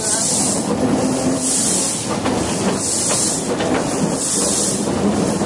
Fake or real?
fake